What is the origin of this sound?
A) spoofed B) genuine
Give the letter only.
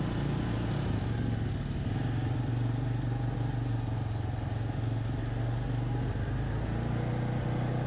B